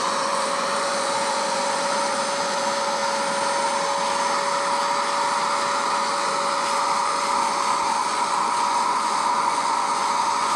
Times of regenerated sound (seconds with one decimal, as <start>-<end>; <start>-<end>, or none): 0.0-3.0; 5.9-10.6